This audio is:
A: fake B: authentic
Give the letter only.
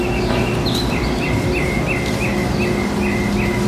B